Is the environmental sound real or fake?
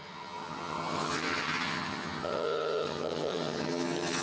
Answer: fake